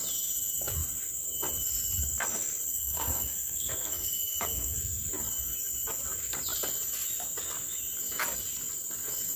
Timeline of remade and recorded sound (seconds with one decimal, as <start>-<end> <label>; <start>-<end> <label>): 0.0-2.7 recorded; 2.7-5.0 remade; 5.0-9.4 recorded